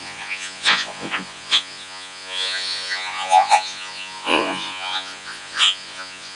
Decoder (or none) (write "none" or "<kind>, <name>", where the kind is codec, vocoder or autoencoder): vocoder, Vocos